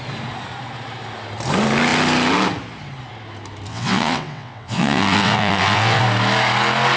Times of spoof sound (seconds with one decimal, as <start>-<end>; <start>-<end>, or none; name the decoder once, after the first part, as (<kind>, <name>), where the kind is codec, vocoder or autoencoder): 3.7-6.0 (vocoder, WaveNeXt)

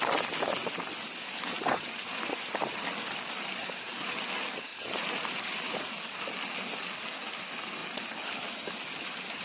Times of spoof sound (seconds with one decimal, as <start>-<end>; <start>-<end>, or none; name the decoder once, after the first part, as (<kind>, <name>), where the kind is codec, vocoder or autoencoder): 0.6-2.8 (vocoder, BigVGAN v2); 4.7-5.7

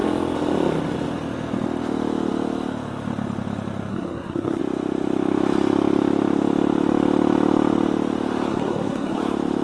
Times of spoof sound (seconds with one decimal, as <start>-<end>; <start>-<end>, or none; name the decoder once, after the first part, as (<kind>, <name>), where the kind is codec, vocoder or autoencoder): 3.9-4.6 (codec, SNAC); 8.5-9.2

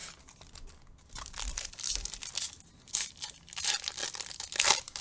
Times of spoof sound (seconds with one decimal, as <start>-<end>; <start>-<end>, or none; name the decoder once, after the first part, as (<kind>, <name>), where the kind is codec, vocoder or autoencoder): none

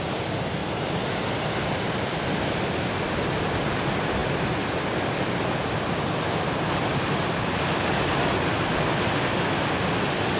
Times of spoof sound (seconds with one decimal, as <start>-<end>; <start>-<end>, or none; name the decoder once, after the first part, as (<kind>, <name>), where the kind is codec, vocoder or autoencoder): none

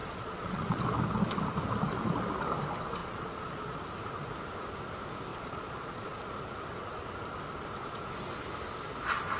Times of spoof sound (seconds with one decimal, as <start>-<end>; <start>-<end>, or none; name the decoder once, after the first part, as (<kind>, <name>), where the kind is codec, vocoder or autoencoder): 0.0-0.8 (vocoder, Vocos); 3.0-3.8; 5.3-6.2

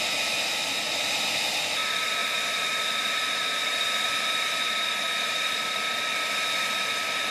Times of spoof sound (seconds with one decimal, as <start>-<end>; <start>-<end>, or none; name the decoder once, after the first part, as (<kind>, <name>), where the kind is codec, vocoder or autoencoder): 2.2-2.7 (vocoder, BigVGAN v2); 3.6-5.7

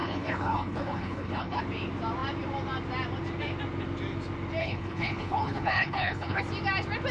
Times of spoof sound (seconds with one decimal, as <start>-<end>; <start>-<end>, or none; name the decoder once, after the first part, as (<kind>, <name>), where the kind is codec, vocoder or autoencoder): 0.0-1.6 (codec, HILCodec); 4.6-6.4